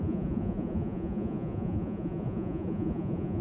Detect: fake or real fake